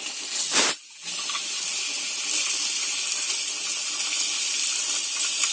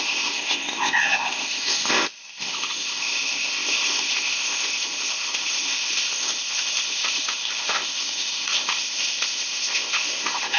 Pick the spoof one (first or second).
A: second